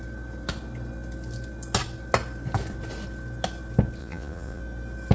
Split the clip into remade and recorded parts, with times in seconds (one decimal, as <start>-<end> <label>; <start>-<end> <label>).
0.0-4.0 recorded; 4.0-4.6 remade; 4.6-5.1 recorded

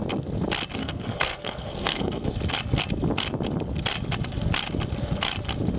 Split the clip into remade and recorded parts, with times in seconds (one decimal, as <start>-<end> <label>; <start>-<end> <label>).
0.0-0.8 recorded; 0.8-2.3 remade; 2.3-5.8 recorded

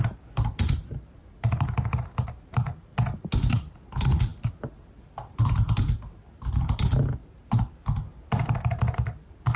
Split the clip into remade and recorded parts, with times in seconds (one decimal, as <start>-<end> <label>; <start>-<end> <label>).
0.0-1.2 recorded; 1.2-2.8 remade; 2.8-7.2 recorded; 7.2-7.7 remade; 7.7-9.6 recorded